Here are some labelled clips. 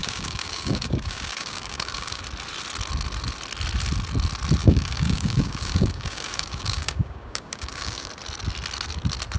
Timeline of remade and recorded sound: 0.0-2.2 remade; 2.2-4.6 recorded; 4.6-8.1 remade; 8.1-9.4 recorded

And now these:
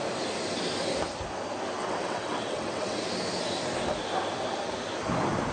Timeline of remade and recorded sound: 0.0-1.8 recorded; 1.8-3.0 remade; 3.0-5.5 recorded

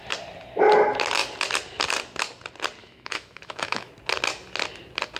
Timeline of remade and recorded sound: 0.0-2.8 recorded; 2.8-3.9 remade; 3.9-5.2 recorded

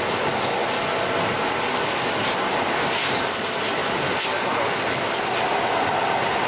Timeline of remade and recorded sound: 0.0-3.8 remade; 3.8-4.9 recorded; 4.9-6.5 remade

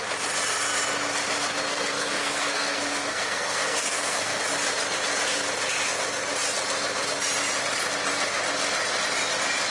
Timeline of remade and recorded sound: 0.0-1.7 recorded; 1.7-4.4 remade; 4.4-9.7 recorded

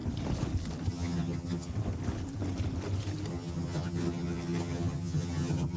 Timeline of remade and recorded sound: 0.0-0.9 recorded; 0.9-1.7 remade; 1.7-3.3 recorded; 3.3-5.8 remade

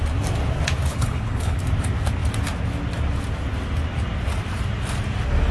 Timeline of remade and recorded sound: 0.0-0.9 recorded; 0.9-1.6 remade; 1.6-5.5 recorded

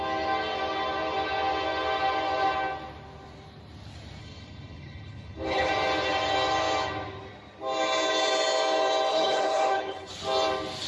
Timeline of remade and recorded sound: 0.0-4.2 recorded; 4.2-5.7 remade; 5.7-9.1 recorded; 9.1-10.1 remade; 10.1-10.9 recorded